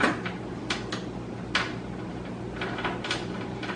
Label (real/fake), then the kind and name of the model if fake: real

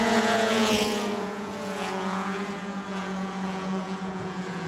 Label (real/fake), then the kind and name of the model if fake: fake, vocoder, Vocos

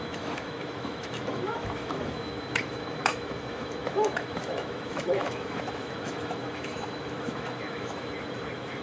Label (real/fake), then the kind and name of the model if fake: fake, autoencoder, DAC-VAE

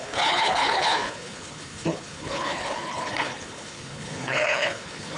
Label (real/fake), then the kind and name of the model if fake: fake, codec, HILCodec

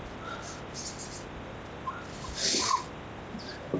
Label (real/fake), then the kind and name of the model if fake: real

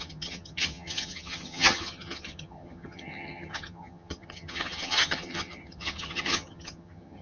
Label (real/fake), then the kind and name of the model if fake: fake, vocoder, HiFi-GAN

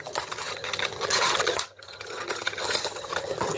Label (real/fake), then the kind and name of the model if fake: fake, vocoder, HiFi-GAN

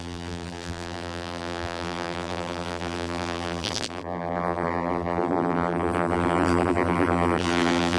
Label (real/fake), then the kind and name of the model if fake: fake, vocoder, BigVGAN v2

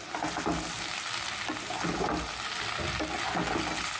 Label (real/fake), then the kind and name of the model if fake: real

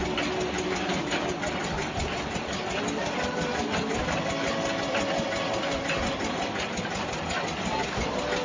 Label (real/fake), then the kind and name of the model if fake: real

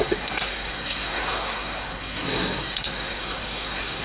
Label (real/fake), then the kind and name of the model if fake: fake, codec, SNAC